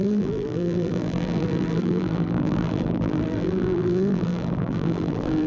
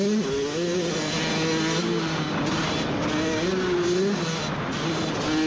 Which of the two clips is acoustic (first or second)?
second